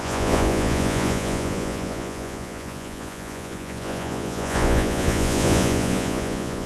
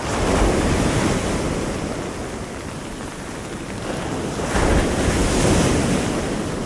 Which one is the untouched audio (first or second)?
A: second